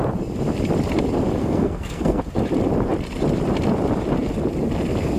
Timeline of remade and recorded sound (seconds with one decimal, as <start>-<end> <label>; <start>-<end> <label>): 0.0-1.4 recorded; 1.4-2.2 remade; 2.2-5.2 recorded